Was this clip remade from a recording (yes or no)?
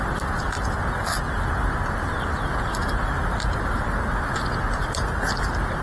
no